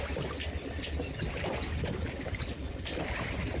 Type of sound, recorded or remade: recorded